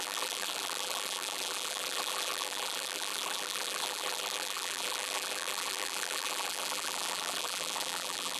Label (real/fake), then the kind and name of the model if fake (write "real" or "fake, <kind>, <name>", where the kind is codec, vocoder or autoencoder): fake, vocoder, BigVGAN v2